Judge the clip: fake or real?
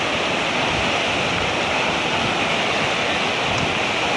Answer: real